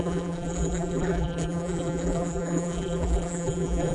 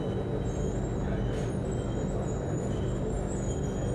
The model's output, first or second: first